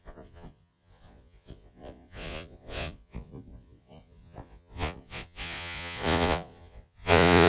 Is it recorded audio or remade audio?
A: remade